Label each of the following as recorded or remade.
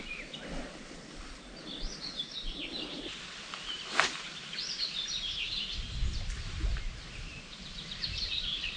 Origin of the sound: remade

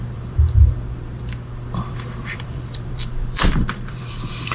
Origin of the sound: remade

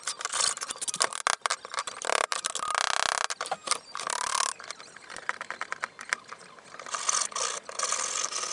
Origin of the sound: recorded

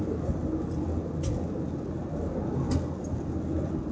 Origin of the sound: recorded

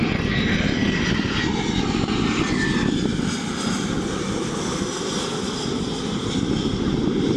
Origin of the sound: recorded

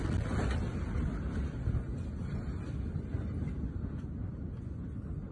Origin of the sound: recorded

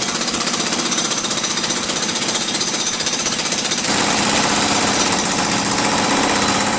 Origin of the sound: remade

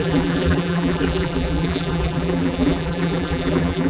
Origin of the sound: remade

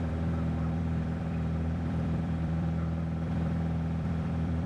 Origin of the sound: remade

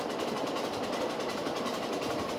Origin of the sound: recorded